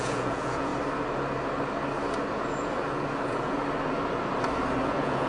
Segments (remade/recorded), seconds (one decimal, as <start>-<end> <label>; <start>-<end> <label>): 0.0-0.7 remade; 0.7-2.3 recorded; 2.3-3.6 remade; 3.6-4.8 recorded; 4.8-5.3 remade